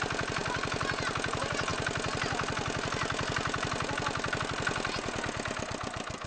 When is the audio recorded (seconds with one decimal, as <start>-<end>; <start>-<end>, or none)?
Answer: 0.0-6.3